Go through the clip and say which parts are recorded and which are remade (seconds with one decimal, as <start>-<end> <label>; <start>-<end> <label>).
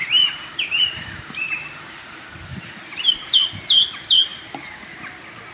0.0-3.3 remade; 3.3-4.3 recorded; 4.3-5.0 remade; 5.0-5.5 recorded